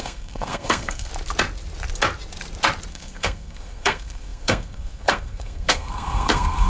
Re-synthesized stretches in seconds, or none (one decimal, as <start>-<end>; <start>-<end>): 0.0-1.1; 2.9-6.7